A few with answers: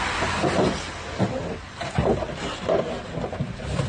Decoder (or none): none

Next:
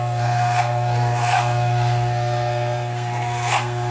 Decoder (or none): codec, SNAC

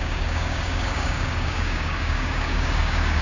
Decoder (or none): codec, DAC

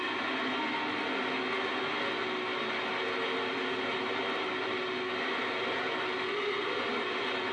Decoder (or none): none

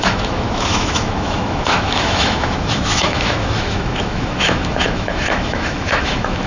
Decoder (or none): autoencoder, DAC-VAE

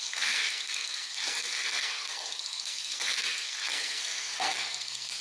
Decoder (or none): codec, SNAC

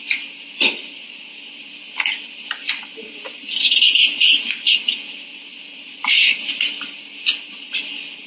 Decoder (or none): none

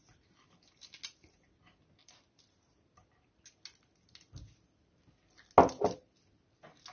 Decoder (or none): none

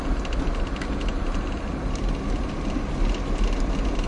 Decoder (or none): none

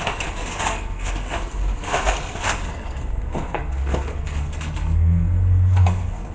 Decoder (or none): codec, SNAC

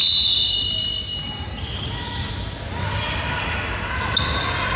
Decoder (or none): none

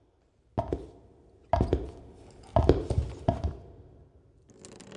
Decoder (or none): none